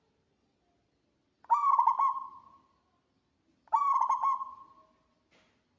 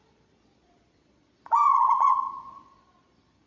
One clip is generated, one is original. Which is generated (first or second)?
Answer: second